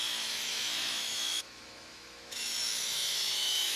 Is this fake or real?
fake